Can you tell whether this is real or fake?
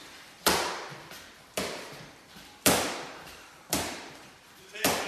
fake